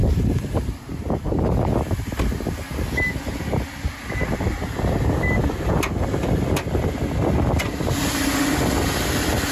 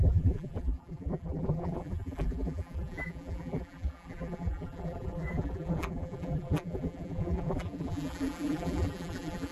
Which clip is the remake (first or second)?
second